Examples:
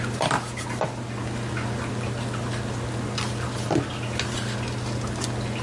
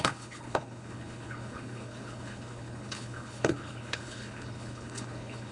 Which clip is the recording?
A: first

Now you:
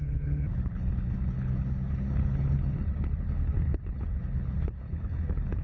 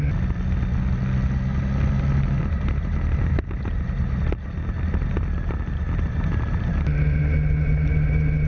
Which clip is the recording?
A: second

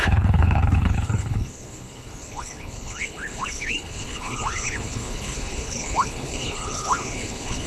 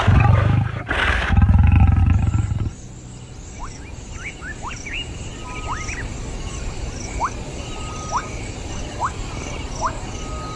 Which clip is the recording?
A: second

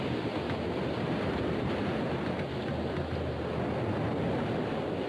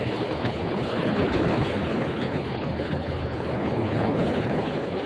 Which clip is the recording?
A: first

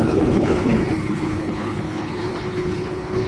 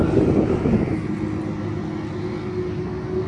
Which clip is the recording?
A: second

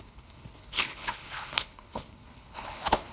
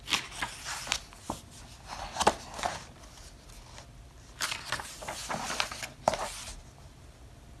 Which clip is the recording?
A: second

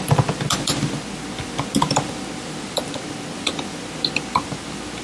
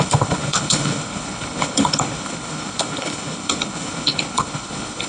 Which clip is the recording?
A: first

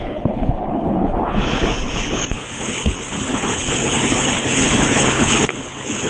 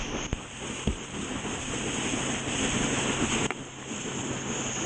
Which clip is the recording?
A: second